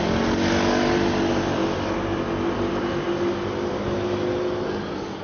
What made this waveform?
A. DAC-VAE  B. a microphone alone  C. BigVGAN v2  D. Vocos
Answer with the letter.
B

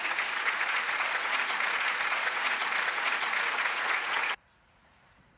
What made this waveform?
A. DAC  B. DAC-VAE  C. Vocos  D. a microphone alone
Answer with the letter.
C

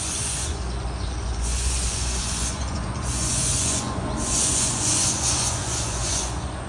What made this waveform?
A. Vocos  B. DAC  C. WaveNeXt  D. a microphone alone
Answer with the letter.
A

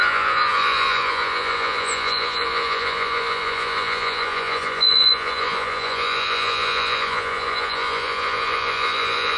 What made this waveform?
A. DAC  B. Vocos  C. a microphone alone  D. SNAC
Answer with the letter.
B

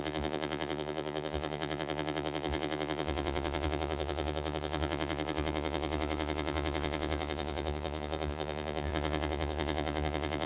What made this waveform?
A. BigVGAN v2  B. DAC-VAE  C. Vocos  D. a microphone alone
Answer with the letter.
C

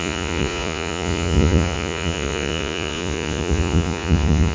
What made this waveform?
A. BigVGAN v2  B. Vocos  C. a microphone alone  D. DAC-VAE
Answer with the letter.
B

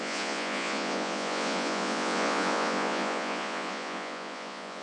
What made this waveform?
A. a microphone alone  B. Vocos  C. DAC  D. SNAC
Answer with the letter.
B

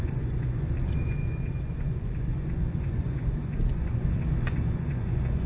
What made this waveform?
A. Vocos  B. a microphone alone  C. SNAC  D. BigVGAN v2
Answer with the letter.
A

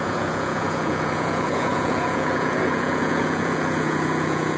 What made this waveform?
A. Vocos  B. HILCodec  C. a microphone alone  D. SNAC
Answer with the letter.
A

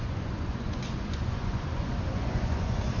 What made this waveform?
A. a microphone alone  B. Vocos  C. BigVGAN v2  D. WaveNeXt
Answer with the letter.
B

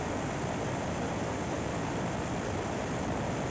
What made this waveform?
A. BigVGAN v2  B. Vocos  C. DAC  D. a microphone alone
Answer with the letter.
D